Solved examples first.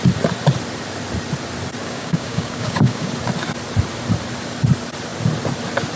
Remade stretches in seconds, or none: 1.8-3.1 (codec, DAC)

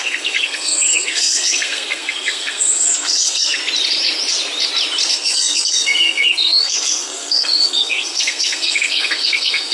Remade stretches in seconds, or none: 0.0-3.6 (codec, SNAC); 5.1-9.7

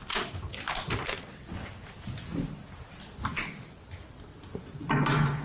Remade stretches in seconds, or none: none